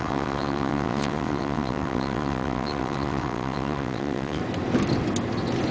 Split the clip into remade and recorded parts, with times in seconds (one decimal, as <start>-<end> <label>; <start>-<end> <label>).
0.0-4.4 remade; 4.4-5.7 recorded